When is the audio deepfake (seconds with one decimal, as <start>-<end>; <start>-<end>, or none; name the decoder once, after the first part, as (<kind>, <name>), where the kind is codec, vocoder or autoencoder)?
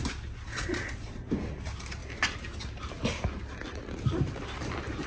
0.5-1.3 (vocoder, Vocos)